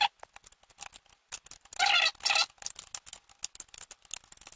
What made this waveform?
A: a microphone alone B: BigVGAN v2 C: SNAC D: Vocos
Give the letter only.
A